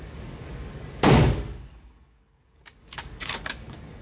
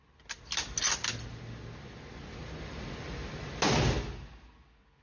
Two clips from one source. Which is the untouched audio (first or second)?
second